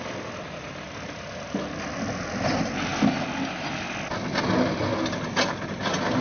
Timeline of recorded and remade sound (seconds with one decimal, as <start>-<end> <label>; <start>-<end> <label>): 0.0-6.2 recorded